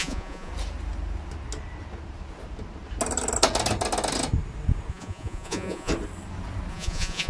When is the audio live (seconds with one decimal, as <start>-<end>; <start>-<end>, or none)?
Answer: 0.5-4.9; 5.9-6.7